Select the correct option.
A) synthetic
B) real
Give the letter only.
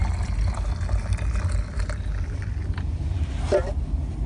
B